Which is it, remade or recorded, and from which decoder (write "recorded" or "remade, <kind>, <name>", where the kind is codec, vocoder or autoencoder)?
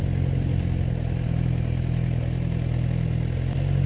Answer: recorded